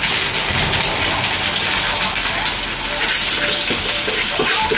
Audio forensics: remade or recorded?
recorded